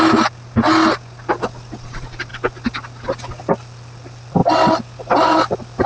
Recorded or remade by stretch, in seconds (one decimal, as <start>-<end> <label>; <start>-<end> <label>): 0.0-0.6 remade; 0.6-1.3 recorded; 1.3-2.3 remade; 2.3-3.4 recorded; 3.4-4.4 remade; 4.4-5.2 recorded; 5.2-5.9 remade